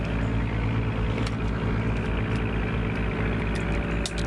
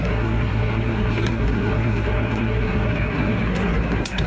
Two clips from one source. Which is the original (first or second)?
first